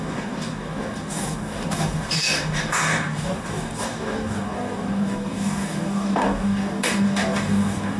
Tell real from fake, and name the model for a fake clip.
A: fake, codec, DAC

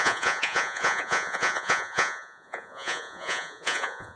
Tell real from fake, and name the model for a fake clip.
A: fake, vocoder, Vocos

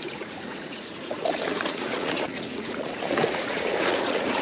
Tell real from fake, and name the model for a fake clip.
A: fake, vocoder, Vocos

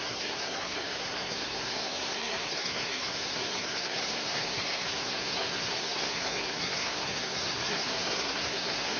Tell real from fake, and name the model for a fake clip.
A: fake, codec, SNAC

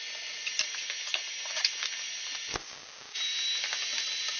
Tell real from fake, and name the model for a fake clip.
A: real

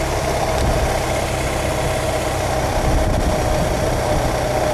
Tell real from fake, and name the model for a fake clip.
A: real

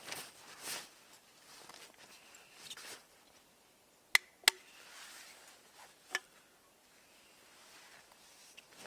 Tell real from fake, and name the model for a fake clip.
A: real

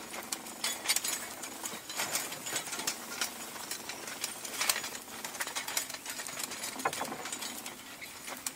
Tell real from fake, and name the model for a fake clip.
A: real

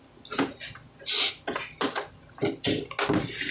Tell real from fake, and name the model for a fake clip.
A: real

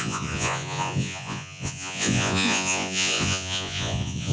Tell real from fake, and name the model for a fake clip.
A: fake, vocoder, Vocos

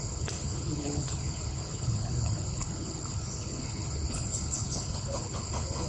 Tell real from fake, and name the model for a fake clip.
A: fake, codec, HILCodec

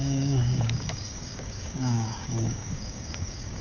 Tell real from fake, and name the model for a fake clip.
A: fake, codec, DAC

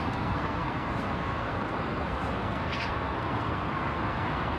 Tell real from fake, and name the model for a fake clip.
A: fake, codec, SNAC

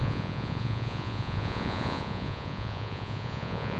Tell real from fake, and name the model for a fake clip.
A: fake, vocoder, Vocos